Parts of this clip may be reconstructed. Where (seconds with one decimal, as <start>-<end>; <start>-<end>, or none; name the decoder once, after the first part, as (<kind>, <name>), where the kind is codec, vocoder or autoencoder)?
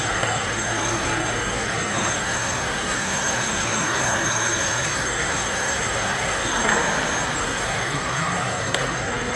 0.0-6.7 (codec, SNAC); 7.4-9.4